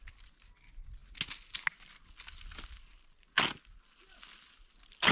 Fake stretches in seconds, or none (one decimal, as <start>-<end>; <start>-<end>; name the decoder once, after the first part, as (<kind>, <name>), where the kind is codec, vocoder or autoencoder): none